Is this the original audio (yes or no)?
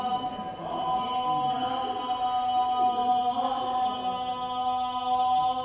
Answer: yes